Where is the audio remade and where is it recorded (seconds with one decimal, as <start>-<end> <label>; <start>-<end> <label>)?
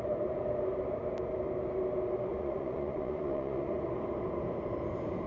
0.0-2.3 recorded; 2.3-3.7 remade; 3.7-5.3 recorded